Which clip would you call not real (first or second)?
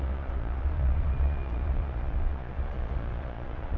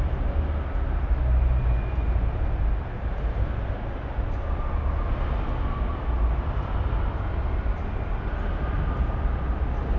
first